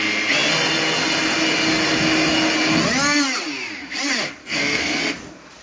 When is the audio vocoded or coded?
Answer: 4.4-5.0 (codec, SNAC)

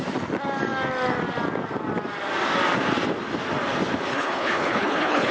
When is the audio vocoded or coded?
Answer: 4.1-5.3 (codec, HILCodec)

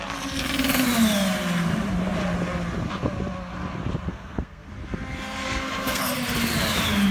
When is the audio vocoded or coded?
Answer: 4.1-4.7 (codec, SNAC); 5.4-6.0